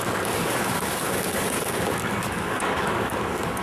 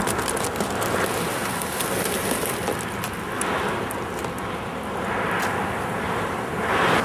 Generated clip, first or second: first